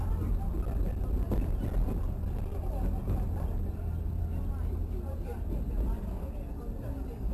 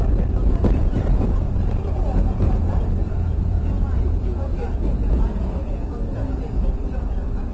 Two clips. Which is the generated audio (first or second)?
second